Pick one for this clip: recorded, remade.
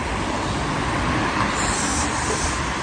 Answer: recorded